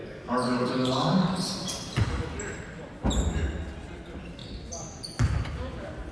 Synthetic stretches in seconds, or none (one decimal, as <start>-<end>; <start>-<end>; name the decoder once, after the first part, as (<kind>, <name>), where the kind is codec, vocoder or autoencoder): 0.0-1.4 (codec, DAC)

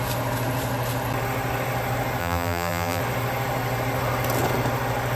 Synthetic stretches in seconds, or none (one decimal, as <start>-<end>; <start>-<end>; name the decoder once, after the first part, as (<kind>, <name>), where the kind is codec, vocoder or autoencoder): 2.2-3.0 (vocoder, BigVGAN v2)

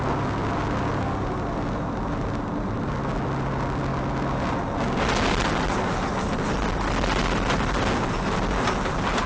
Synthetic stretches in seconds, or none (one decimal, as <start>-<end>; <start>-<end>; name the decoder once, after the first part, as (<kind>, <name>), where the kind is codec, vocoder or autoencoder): none

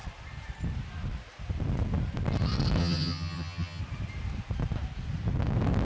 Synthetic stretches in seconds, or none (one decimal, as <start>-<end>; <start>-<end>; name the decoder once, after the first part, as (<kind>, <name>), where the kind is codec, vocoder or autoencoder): 2.8-3.8 (vocoder, HiFi-GAN)

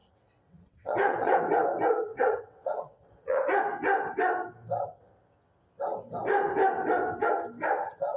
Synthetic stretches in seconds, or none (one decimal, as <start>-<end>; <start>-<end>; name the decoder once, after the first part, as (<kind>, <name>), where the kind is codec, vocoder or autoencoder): 0.0-1.4 (vocoder, WaveNeXt); 2.1-3.4